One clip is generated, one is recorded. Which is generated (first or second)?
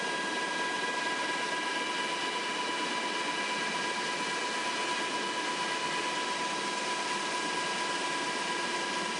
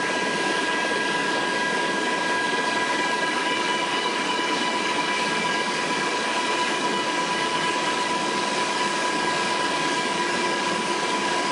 second